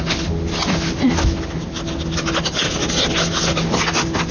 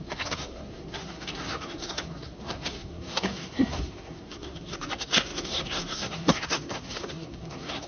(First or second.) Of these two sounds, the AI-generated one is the second